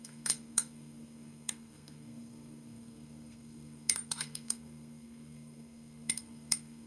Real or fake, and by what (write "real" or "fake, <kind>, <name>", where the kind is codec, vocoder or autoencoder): fake, codec, SNAC